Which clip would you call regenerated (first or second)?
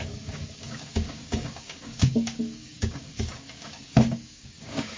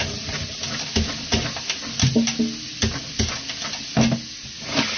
first